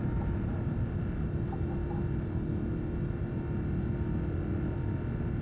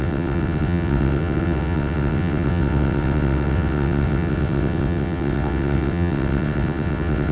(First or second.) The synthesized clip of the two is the second